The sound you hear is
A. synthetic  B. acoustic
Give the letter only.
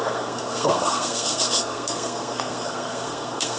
A